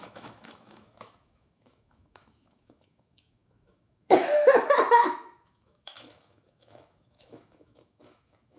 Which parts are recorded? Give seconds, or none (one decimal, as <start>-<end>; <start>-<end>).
none